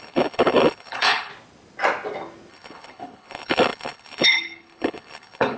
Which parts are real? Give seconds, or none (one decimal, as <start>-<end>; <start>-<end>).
1.3-2.5